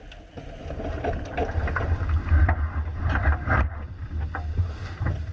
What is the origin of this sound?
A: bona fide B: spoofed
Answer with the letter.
B